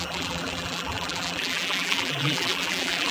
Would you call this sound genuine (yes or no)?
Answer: no